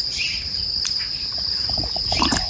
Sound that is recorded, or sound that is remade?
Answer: recorded